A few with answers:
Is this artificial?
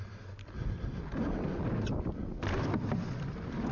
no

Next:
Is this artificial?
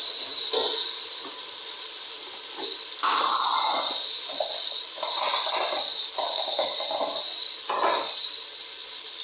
no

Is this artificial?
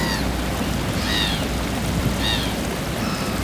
no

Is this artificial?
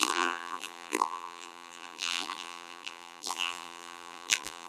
yes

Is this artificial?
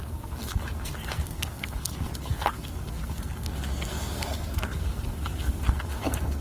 yes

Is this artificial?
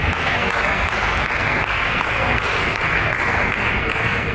yes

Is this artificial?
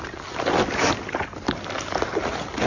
no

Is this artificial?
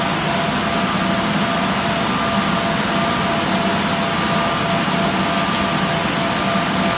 no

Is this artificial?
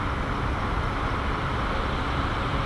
no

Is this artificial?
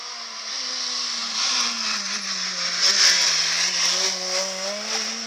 no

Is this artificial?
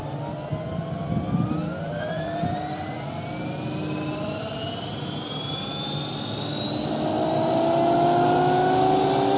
no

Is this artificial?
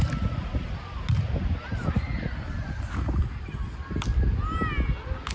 no